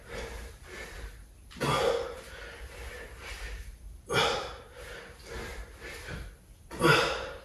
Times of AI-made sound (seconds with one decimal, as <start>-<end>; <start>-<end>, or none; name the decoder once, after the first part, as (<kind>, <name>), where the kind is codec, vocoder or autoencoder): 2.5-3.8 (vocoder, BigVGAN v2); 5.5-6.6